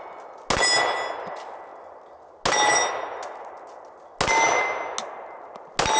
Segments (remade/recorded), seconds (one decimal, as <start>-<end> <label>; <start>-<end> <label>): 0.0-6.0 recorded